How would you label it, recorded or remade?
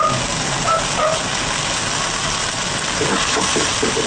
recorded